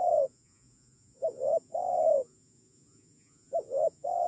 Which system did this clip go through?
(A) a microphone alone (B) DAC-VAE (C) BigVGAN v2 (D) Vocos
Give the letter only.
D